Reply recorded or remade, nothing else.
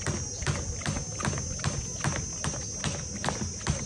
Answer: recorded